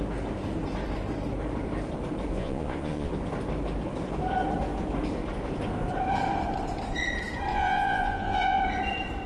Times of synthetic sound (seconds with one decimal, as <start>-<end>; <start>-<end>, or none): 2.3-3.1; 7.5-8.6